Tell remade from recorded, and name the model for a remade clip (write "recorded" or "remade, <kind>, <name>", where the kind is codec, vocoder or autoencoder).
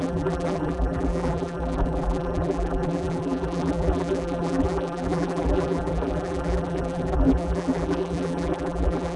remade, vocoder, BigVGAN v2